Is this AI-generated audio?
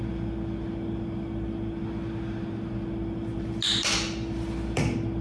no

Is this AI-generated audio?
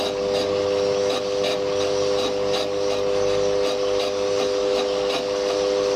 no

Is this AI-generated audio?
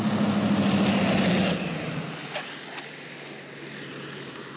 no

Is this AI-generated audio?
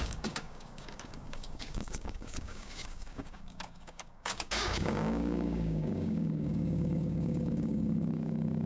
yes